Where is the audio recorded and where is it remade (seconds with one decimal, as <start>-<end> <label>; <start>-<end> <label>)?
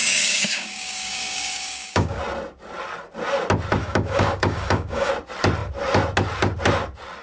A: 0.0-2.2 remade; 2.2-3.8 recorded; 3.8-5.1 remade; 5.1-7.2 recorded